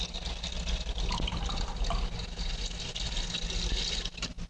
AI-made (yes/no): no